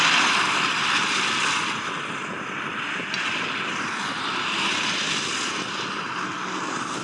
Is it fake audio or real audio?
fake